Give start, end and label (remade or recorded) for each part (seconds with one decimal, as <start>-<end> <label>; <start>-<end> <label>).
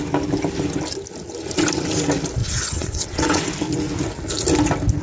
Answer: 0.0-2.4 recorded; 2.4-3.5 remade; 3.5-5.0 recorded